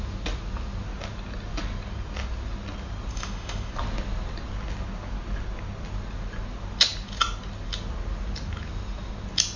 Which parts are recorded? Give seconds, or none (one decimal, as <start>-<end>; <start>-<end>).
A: 0.0-3.1; 3.7-9.6